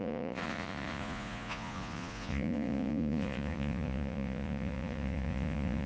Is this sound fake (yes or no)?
yes